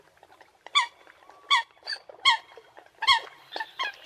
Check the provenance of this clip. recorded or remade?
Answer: remade